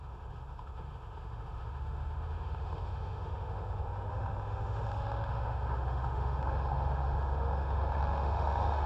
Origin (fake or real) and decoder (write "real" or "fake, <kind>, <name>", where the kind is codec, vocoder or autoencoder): fake, autoencoder, DAC-VAE